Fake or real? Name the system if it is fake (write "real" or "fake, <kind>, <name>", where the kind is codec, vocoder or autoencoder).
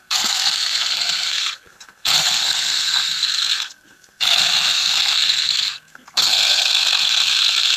fake, codec, SNAC